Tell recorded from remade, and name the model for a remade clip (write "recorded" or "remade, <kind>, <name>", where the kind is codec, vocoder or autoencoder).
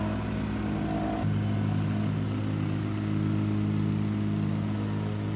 recorded